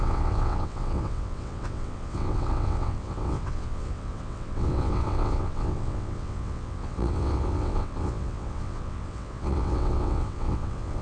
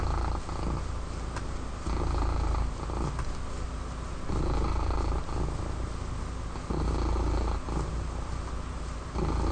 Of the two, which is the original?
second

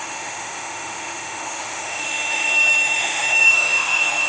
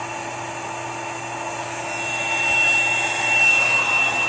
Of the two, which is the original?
second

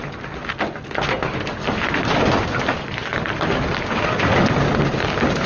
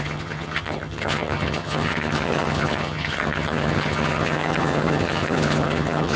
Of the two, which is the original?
first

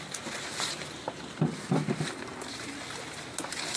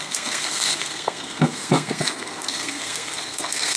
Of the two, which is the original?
first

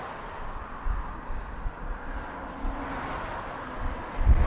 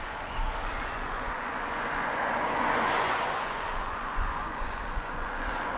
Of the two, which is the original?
first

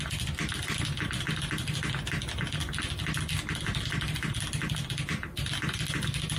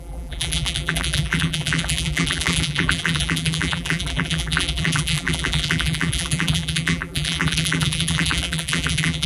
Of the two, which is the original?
first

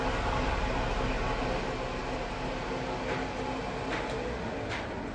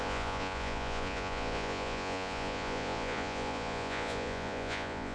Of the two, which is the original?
first